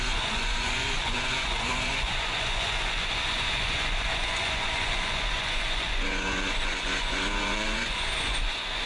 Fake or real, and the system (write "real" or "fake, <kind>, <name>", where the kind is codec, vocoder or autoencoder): fake, vocoder, Vocos